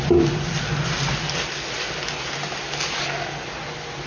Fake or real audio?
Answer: real